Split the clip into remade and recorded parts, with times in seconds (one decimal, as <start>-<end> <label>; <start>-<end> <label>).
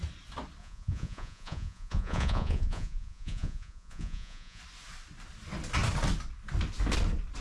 0.0-0.6 recorded; 0.6-4.6 remade; 4.6-7.4 recorded